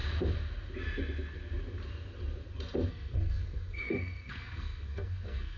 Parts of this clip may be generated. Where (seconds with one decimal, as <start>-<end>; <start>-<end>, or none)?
2.9-5.6